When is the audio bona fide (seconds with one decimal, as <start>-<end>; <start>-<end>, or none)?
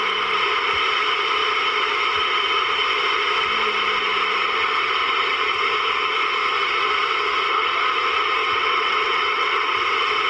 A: 0.0-8.4; 9.5-10.3